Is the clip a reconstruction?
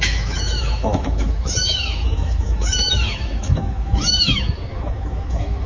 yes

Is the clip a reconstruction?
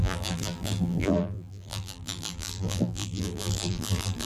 yes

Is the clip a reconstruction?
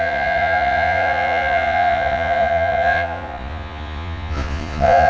yes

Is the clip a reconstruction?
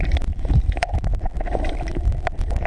no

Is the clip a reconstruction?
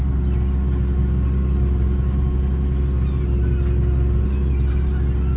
no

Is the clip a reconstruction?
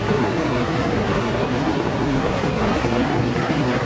yes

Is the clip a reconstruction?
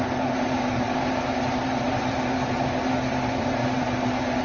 yes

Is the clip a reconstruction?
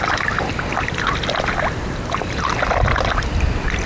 no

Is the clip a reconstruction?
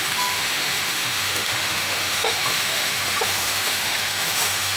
yes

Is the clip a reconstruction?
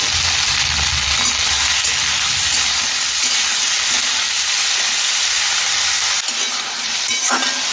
no